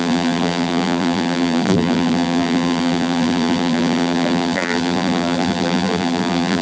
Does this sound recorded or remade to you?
remade